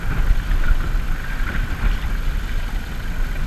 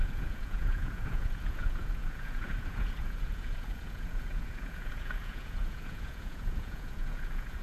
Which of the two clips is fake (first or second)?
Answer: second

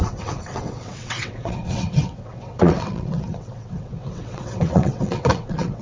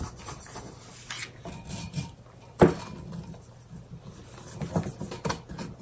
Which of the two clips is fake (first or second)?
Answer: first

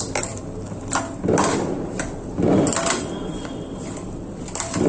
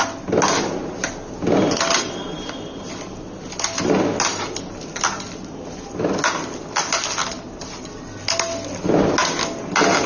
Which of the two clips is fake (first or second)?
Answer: first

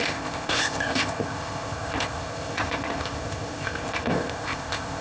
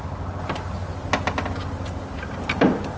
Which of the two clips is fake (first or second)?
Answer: first